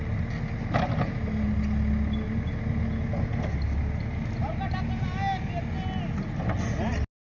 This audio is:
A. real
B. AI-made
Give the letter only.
A